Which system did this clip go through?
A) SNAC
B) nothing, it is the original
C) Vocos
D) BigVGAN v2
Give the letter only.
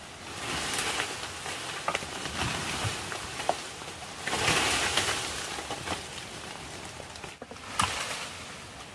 B